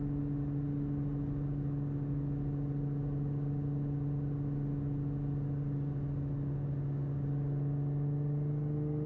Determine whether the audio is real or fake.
real